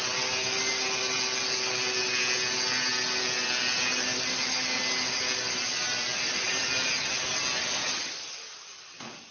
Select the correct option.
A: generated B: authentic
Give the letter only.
B